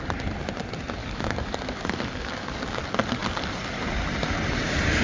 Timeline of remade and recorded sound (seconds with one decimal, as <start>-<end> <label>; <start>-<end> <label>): 0.0-1.0 recorded; 1.0-2.8 remade; 2.8-5.0 recorded